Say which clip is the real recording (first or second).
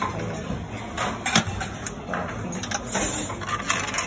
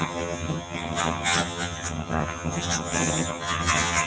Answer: first